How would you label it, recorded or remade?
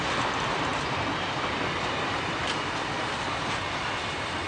recorded